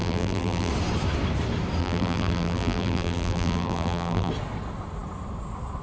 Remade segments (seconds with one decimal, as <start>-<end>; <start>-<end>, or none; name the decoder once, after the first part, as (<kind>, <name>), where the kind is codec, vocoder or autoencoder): 0.0-0.7 (vocoder, BigVGAN v2); 1.8-4.3